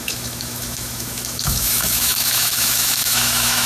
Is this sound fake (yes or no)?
yes